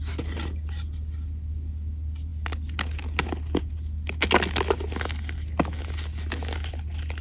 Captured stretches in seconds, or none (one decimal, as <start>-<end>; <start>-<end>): 0.0-7.2